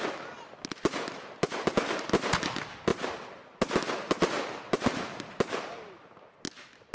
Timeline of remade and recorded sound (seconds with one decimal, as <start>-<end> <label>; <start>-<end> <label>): 0.0-6.9 recorded